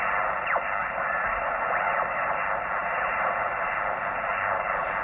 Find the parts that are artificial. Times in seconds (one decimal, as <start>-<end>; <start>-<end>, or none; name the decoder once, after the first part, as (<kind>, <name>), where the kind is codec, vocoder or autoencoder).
0.8-2.3 (vocoder, BigVGAN v2); 2.8-3.7